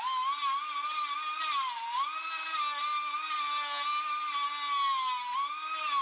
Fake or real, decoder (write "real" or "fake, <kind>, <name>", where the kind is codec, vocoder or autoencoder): real